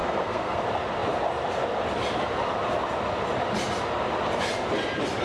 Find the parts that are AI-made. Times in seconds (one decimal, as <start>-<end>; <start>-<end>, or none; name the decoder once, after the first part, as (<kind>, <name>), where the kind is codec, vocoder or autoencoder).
0.0-0.6 (codec, SNAC)